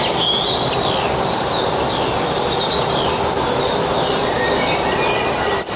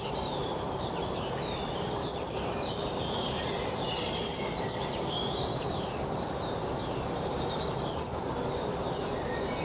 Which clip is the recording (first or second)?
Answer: first